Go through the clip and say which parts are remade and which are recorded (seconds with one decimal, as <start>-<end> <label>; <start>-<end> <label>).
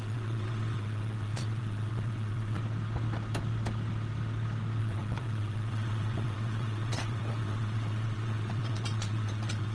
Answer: 0.0-2.6 remade; 2.6-4.8 recorded; 4.8-9.7 remade